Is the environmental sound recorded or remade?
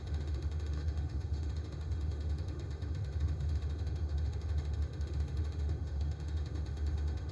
remade